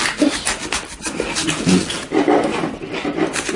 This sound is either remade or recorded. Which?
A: recorded